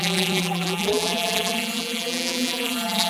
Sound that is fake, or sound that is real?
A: fake